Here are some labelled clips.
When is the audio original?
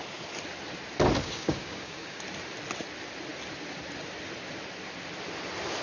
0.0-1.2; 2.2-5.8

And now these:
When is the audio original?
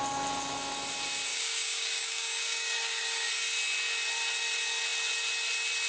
0.0-1.3; 3.3-5.9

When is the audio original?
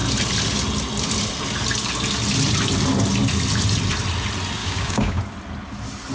0.0-4.6; 5.2-6.1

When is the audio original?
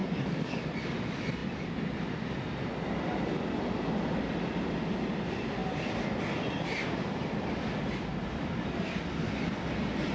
0.6-10.1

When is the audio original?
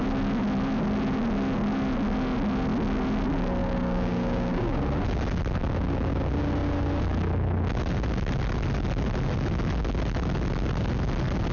0.0-3.6; 4.8-11.5